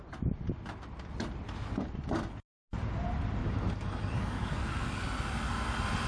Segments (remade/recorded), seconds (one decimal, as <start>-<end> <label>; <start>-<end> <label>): 0.0-3.4 recorded; 3.4-5.0 remade; 5.0-6.1 recorded